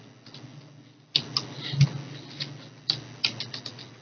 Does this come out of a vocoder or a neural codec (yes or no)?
no